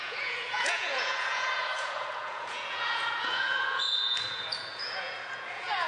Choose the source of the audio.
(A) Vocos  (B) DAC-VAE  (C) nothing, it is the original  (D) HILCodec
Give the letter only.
A